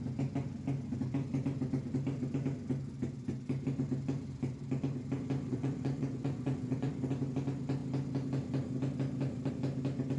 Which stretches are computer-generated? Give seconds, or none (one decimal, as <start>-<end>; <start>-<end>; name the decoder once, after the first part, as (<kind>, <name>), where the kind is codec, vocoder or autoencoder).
5.5-6.9 (vocoder, Vocos)